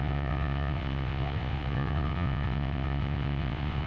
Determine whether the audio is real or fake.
fake